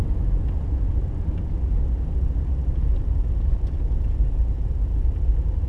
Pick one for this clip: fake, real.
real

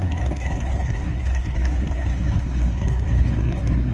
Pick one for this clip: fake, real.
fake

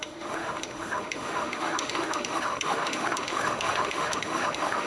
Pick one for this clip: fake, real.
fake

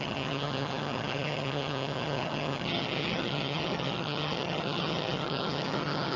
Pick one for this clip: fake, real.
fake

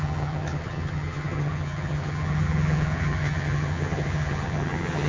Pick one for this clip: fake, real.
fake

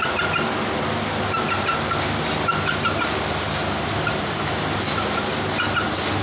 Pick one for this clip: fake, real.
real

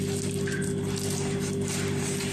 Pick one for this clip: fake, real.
real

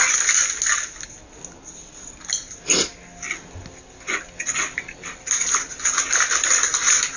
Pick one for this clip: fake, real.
real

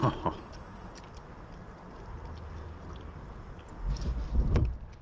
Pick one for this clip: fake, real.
real